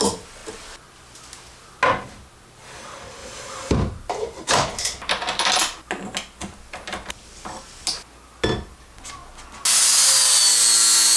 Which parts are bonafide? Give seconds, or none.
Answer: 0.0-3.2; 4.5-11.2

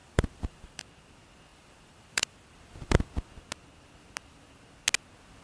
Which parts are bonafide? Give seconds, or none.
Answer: 0.8-1.5; 3.1-5.4

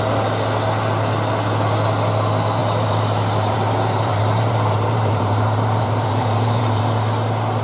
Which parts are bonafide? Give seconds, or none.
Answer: 0.0-2.6; 6.8-7.6

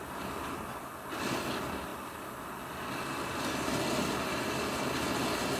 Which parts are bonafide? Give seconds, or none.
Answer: 0.0-5.6

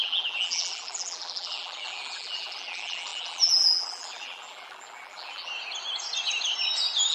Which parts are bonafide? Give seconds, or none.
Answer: 5.5-7.1

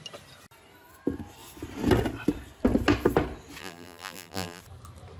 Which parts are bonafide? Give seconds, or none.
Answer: 0.0-3.6; 4.6-5.2